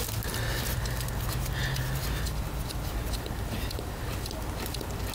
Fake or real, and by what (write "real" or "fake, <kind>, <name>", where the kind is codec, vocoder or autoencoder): real